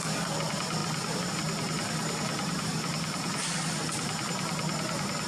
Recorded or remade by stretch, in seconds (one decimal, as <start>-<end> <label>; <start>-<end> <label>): 0.0-5.3 recorded